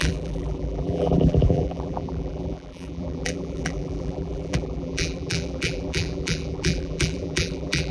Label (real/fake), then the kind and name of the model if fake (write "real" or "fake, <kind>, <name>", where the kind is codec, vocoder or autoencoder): fake, vocoder, BigVGAN v2